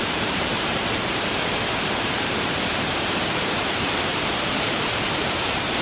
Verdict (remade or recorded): remade